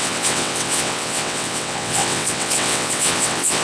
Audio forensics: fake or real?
fake